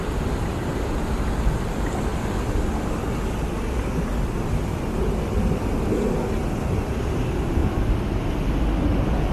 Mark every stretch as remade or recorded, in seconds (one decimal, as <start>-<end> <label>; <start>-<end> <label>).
0.0-9.3 recorded